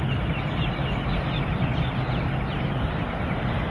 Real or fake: real